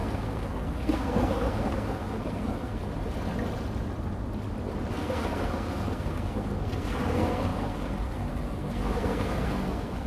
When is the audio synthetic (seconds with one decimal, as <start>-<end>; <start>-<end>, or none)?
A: 0.0-2.8; 4.9-10.1